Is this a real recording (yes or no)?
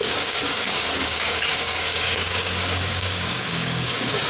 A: no